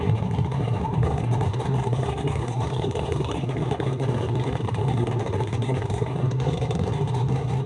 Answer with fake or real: fake